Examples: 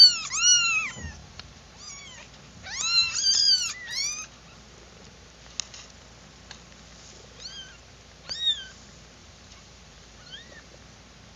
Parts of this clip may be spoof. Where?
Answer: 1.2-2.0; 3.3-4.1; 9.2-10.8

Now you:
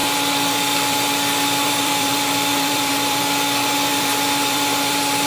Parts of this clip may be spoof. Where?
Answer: 0.0-3.2; 3.9-5.3

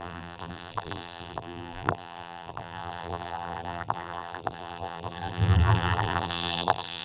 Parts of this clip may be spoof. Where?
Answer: 0.0-7.0